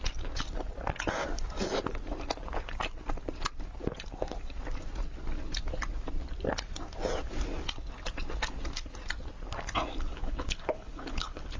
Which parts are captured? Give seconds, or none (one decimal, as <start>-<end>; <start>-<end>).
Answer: 0.0-10.1